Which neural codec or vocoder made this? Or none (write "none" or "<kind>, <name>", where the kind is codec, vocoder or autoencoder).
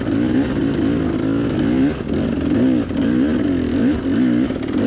none